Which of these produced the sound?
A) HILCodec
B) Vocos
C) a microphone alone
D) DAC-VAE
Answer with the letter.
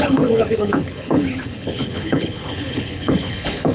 A